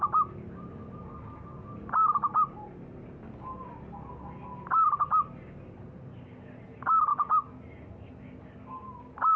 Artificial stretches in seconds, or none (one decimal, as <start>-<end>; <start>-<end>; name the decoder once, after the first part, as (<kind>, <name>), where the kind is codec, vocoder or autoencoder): none